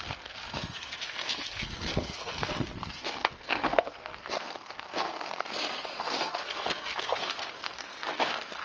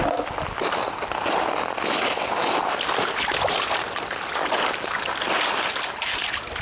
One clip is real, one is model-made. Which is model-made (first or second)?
first